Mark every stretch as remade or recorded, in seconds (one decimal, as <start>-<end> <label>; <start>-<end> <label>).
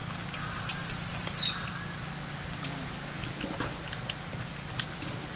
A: 0.0-5.4 recorded